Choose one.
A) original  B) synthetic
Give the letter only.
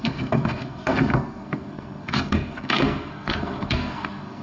B